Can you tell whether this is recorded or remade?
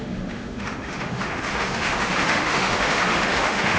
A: remade